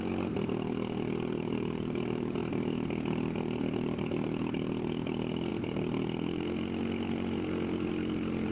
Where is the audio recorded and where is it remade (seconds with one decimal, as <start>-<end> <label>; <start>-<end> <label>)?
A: 0.0-8.5 recorded